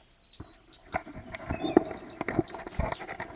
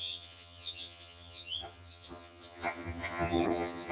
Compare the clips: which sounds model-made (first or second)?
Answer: second